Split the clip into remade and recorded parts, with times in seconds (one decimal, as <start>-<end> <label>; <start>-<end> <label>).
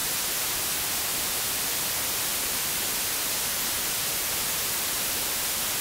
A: 0.0-5.8 recorded